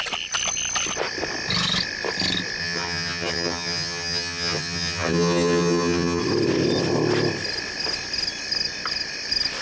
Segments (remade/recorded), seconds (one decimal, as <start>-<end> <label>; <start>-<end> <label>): 0.0-2.6 recorded; 2.6-6.2 remade; 6.2-9.6 recorded